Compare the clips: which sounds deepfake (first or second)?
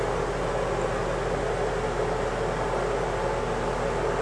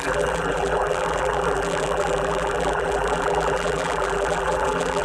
second